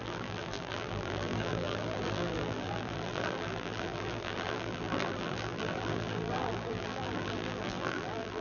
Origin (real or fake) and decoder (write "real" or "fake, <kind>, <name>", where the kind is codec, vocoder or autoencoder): fake, vocoder, BigVGAN v2